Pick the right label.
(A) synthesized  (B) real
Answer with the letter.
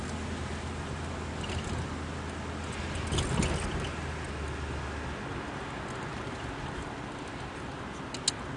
B